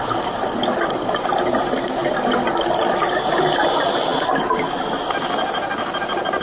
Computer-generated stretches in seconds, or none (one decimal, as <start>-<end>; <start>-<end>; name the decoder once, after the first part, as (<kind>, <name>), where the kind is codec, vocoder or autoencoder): none